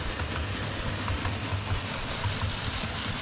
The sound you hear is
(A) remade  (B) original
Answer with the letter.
A